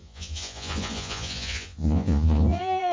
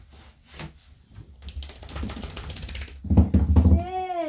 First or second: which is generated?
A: first